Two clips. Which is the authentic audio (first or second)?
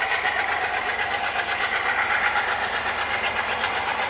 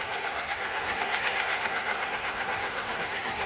first